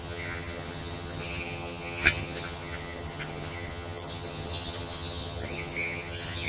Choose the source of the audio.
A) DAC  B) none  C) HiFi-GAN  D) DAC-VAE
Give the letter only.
C